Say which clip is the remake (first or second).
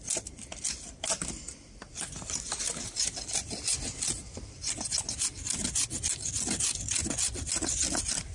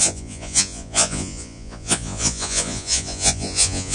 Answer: second